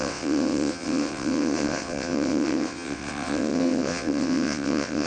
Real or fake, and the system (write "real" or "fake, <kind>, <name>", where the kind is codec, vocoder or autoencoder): fake, vocoder, WaveNeXt